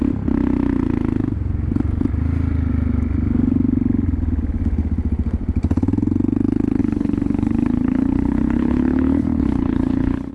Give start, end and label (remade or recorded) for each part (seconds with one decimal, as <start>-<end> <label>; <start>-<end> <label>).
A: 0.0-6.8 recorded; 6.8-10.3 remade